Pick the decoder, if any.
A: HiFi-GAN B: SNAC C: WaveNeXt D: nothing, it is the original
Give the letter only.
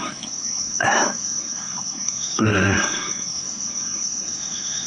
B